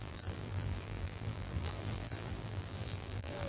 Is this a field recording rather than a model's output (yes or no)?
no